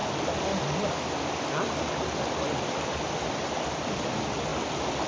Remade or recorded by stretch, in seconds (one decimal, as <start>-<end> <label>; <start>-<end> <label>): 0.0-5.1 recorded